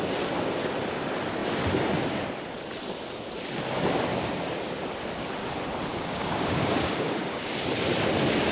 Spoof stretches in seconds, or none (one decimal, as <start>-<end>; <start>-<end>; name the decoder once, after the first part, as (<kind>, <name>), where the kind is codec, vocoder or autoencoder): 5.9-7.5 (codec, DAC)